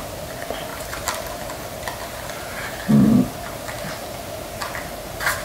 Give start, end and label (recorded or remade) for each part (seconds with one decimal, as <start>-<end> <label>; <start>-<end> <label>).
0.0-5.4 recorded